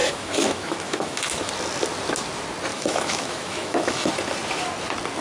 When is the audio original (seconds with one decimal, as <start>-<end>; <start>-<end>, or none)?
1.5-2.7; 4.1-5.2